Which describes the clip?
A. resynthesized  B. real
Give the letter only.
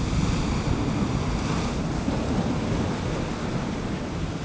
B